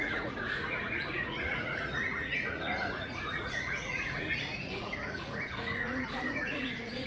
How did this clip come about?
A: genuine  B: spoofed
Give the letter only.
B